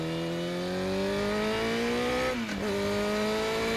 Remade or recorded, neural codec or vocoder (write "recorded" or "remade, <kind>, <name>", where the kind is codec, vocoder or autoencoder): recorded